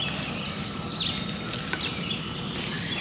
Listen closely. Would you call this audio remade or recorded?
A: recorded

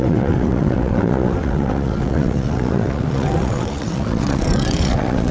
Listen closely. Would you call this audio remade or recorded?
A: remade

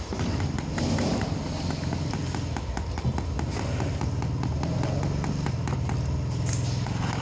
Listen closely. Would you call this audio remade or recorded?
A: recorded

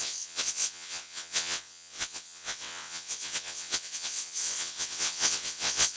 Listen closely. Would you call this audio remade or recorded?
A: remade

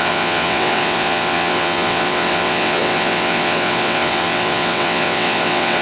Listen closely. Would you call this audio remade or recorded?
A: remade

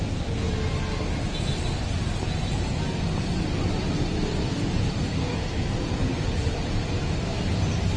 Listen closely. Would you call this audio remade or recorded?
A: recorded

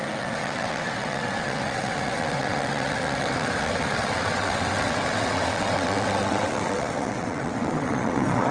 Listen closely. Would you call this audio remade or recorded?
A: remade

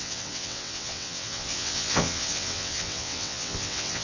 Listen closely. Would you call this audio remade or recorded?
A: remade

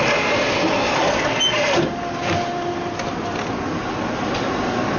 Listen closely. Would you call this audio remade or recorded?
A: recorded